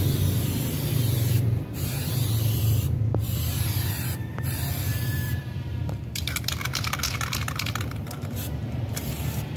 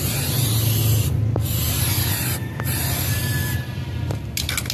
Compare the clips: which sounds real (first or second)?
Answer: second